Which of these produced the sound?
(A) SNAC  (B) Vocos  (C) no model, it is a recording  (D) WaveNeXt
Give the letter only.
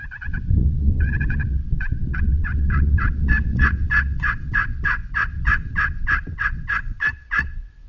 D